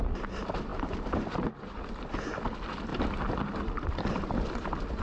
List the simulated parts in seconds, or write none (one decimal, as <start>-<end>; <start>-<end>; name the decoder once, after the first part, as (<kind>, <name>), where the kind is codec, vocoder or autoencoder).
2.9-5.0 (vocoder, BigVGAN v2)